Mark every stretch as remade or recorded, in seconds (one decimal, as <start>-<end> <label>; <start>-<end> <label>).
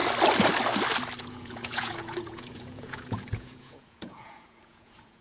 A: 0.0-1.2 recorded; 1.2-5.2 remade